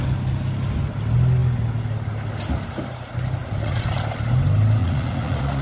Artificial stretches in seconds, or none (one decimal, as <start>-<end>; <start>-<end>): 3.4-4.0; 4.8-5.6